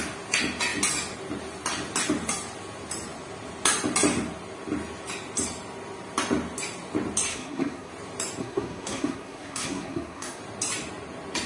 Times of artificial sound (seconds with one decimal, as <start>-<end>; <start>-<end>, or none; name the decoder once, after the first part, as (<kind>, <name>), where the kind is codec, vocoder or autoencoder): 7.3-7.9 (codec, SNAC); 8.4-10.4